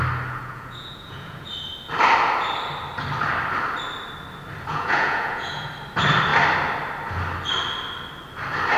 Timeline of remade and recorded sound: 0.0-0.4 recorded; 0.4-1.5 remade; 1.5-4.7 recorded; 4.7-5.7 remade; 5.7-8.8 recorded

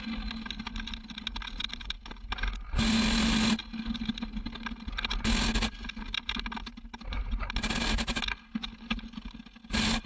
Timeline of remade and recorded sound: 0.0-10.1 recorded

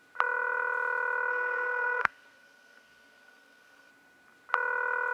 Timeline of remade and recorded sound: 0.0-1.3 recorded; 1.3-3.9 remade; 3.9-5.1 recorded

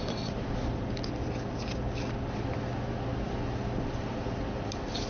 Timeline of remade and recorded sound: 0.0-5.1 recorded

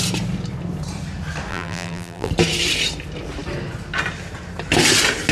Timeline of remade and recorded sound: 0.0-1.5 recorded; 1.5-2.3 remade; 2.3-5.3 recorded

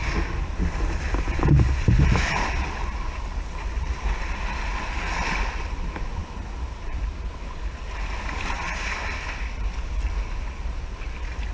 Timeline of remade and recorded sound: 0.0-11.5 recorded